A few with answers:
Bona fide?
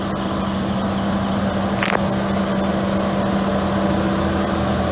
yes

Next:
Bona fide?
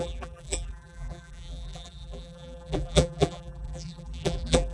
no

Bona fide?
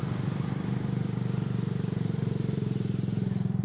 no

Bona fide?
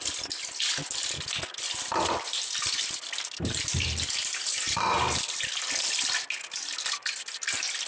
yes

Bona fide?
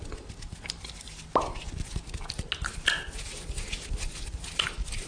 yes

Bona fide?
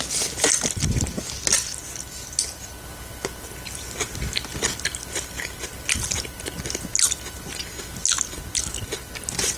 yes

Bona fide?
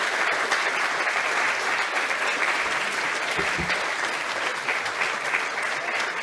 yes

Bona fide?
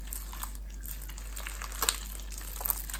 yes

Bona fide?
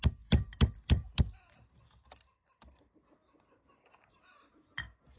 yes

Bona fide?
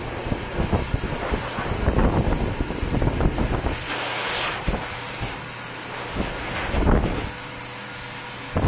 yes